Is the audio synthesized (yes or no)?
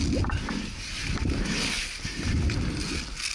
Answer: no